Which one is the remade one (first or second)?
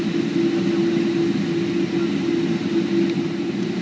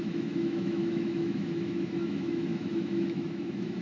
second